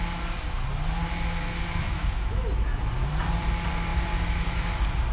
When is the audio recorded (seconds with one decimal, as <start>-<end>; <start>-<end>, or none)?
0.0-1.6; 2.8-5.1